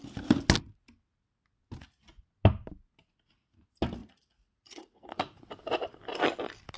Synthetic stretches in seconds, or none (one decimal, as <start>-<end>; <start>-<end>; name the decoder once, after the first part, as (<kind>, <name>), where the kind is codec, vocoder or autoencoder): 4.0-5.4 (vocoder, Vocos)